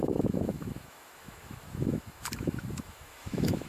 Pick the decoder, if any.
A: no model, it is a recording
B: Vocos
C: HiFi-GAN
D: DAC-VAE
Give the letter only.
D